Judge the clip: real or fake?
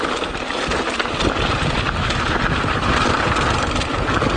real